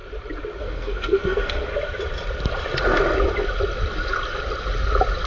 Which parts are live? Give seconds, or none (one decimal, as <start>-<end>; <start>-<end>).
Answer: 0.0-0.6; 1.7-5.3